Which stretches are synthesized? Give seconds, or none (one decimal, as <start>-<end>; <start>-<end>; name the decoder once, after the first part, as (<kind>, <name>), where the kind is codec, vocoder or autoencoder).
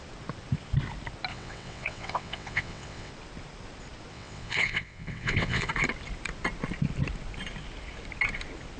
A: 1.3-3.1 (vocoder, WaveNeXt); 4.1-5.7